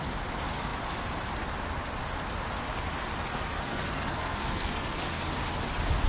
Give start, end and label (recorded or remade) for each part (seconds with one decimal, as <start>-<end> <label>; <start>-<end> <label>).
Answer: 0.0-3.3 recorded; 3.3-5.3 remade; 5.3-6.1 recorded